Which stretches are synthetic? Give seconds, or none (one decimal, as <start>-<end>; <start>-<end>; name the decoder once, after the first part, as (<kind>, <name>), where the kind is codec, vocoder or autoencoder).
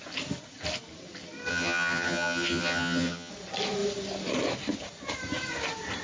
1.5-3.3 (vocoder, HiFi-GAN)